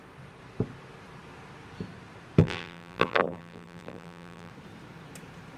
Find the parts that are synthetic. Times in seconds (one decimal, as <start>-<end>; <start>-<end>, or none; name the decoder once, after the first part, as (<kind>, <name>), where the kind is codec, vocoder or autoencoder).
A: 2.4-4.5 (vocoder, BigVGAN v2)